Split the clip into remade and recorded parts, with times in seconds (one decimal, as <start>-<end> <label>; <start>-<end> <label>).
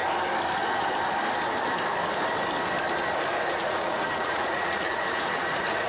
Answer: 0.0-3.5 recorded; 3.5-5.9 remade